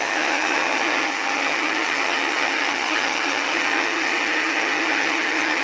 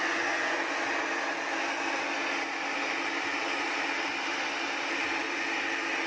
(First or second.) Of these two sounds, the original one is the second